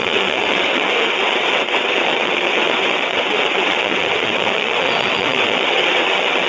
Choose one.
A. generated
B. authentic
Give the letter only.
A